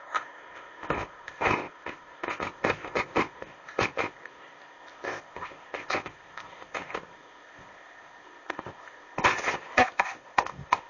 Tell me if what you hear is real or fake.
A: fake